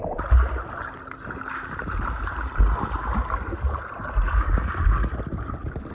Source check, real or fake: real